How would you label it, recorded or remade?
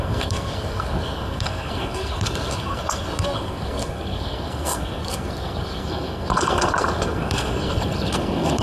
remade